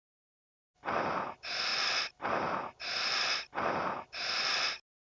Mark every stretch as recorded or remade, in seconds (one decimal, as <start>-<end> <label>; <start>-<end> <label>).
0.0-5.1 recorded